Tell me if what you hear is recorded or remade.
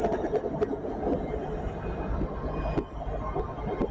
recorded